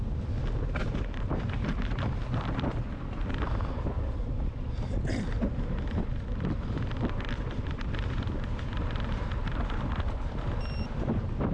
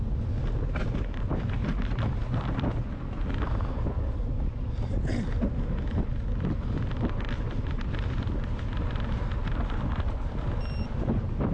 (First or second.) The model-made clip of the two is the first